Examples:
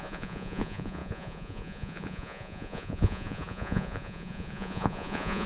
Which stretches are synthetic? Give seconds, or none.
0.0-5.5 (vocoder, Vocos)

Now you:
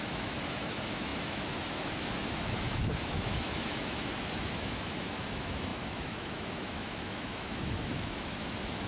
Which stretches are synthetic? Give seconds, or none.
0.0-8.9 (autoencoder, DAC-VAE)